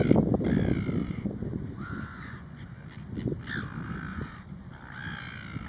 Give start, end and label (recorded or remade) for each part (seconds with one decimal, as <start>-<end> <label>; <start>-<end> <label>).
0.0-1.0 recorded; 1.0-2.8 remade; 2.8-4.1 recorded; 4.1-4.6 remade; 4.6-5.7 recorded